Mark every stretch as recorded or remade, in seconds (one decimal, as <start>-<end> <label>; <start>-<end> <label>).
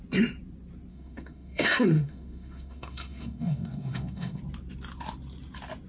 0.0-0.9 recorded; 0.9-4.4 remade; 4.4-5.9 recorded